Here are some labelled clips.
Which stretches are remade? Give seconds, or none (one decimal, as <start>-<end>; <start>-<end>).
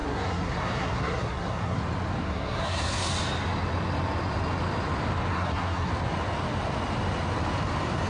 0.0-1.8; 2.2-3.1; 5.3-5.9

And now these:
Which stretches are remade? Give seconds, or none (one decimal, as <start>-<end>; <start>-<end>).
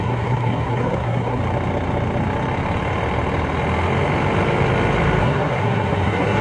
0.0-1.4; 5.2-6.4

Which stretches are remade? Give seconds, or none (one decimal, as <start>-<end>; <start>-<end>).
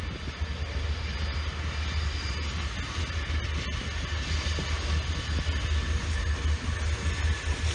none